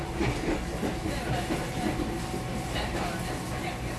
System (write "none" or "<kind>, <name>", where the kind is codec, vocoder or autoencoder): none